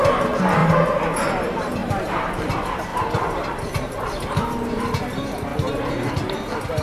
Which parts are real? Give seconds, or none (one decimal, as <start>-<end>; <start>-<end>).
0.0-0.6; 1.3-1.8; 2.5-2.9; 4.9-5.5; 6.1-6.8